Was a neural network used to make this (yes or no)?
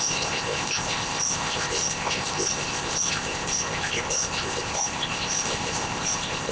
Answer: yes